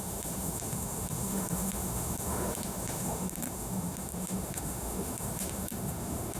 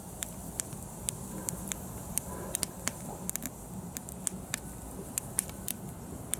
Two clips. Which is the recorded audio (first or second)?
second